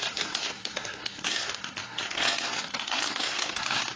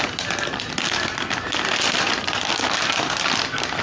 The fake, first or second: first